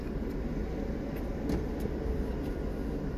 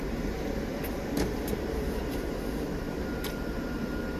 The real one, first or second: first